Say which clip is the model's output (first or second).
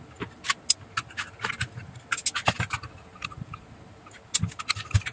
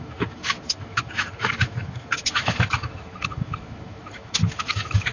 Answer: second